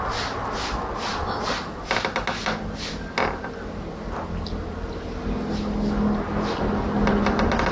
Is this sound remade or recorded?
recorded